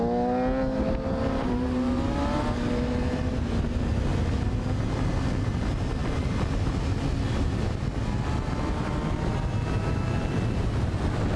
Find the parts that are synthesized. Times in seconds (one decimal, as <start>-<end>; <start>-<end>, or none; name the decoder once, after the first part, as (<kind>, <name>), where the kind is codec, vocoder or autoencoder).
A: none